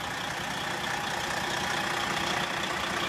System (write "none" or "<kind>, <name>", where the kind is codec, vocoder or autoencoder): none